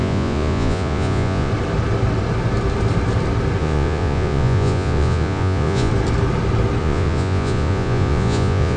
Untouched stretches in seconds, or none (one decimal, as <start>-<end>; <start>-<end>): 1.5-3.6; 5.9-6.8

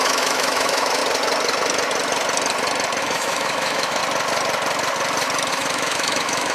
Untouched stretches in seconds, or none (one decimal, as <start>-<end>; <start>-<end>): 1.0-3.0; 4.0-5.5

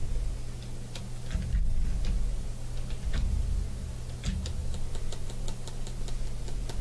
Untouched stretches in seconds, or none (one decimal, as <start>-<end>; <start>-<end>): 0.0-6.8